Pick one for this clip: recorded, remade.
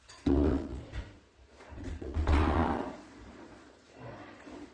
remade